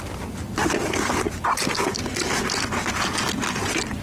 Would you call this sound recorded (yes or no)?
yes